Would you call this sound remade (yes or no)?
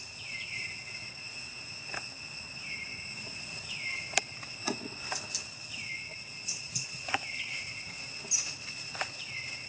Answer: no